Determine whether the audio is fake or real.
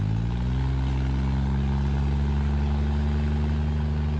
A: real